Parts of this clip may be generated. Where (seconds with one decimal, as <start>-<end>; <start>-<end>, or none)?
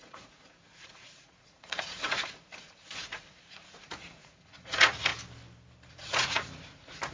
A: 0.0-5.1; 5.9-7.1